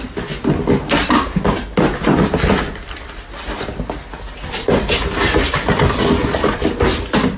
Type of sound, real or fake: real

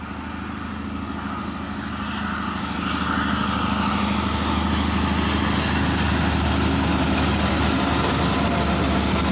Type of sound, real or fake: real